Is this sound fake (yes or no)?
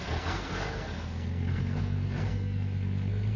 yes